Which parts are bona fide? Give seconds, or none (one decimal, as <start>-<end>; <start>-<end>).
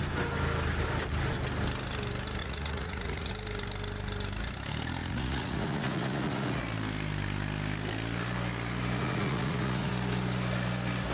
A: 0.0-2.4; 3.3-5.0; 6.6-9.0; 9.9-11.1